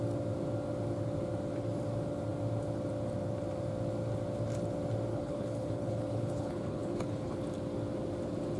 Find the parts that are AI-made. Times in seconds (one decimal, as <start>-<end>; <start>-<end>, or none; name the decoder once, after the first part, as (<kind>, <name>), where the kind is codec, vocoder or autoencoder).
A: 5.1-7.4 (codec, HILCodec)